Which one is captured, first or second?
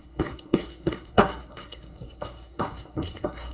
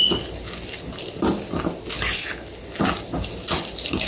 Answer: second